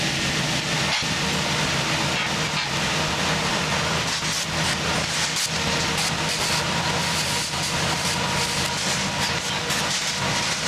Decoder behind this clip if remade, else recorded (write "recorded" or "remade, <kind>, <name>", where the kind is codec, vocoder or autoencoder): recorded